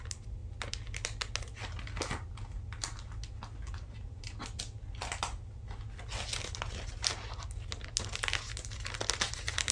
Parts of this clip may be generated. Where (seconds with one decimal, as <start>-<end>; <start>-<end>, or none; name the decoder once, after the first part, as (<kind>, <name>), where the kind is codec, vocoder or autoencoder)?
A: none